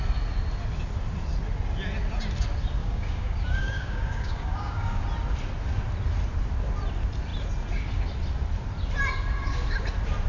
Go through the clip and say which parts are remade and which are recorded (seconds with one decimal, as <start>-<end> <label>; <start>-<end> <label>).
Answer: 0.0-2.8 recorded; 2.8-5.0 remade; 5.0-10.3 recorded